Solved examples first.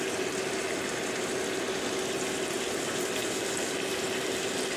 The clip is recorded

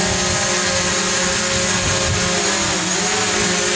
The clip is recorded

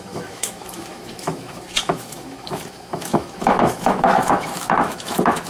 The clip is remade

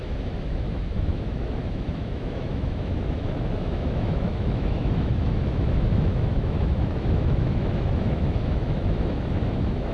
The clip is remade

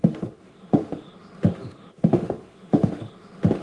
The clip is remade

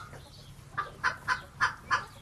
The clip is recorded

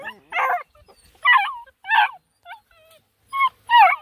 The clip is recorded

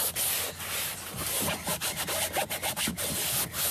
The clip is recorded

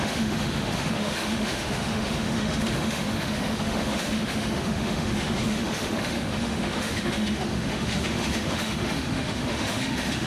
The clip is remade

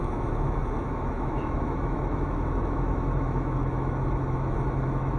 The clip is remade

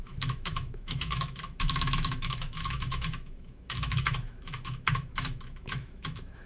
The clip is remade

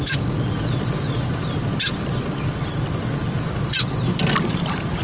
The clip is recorded